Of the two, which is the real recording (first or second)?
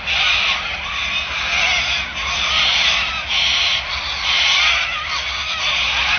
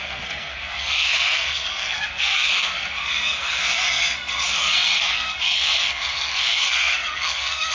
first